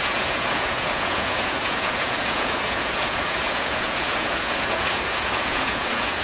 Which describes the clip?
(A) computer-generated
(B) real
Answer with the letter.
A